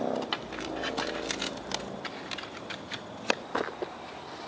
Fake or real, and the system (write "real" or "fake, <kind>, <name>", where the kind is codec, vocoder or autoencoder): real